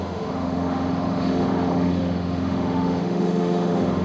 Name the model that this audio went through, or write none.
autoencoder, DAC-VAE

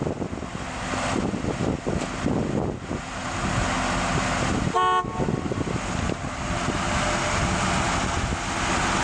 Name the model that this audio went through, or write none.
none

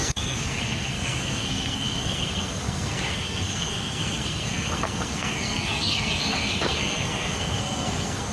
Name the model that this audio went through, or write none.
codec, SNAC